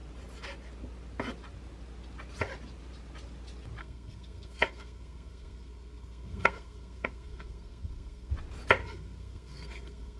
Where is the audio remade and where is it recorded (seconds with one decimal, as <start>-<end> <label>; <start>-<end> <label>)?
0.0-3.8 recorded; 3.8-8.3 remade; 8.3-8.8 recorded; 8.8-10.2 remade